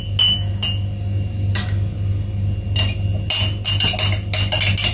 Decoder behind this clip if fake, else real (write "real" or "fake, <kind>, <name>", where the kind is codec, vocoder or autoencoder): real